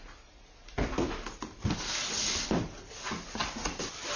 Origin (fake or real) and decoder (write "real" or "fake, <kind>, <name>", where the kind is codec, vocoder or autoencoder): real